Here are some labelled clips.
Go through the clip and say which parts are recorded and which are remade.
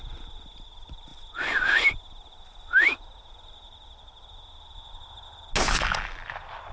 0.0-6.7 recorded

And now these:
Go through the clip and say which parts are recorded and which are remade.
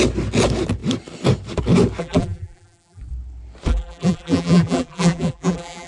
0.0-2.0 recorded; 2.0-3.0 remade; 3.0-3.7 recorded; 3.7-5.9 remade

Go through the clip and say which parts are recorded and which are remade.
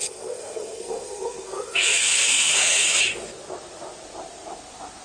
0.0-3.0 remade; 3.0-5.0 recorded